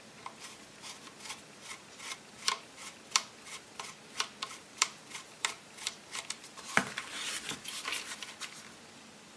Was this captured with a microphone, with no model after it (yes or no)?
yes